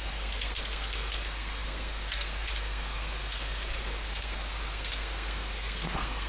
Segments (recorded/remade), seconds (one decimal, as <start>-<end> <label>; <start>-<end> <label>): 0.0-6.3 remade